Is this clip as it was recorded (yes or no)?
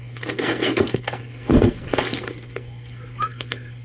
no